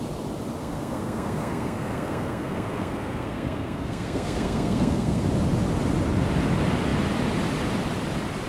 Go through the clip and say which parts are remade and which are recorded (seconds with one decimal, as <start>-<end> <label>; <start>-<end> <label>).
0.0-0.6 recorded; 0.6-5.3 remade; 5.3-8.5 recorded